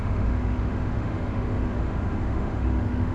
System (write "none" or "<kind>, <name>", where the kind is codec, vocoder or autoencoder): autoencoder, DAC-VAE